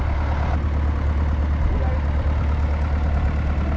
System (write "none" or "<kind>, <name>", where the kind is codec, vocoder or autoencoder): none